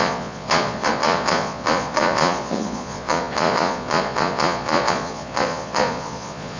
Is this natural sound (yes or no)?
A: no